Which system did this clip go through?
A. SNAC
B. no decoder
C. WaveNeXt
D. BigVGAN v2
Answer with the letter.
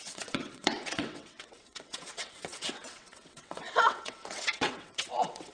C